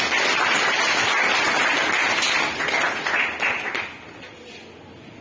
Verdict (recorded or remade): recorded